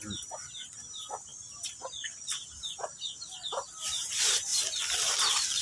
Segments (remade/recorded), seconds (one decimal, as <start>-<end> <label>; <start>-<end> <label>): 0.0-5.6 recorded